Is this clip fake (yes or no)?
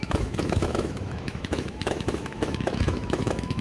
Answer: yes